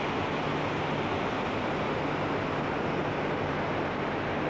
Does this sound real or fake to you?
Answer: real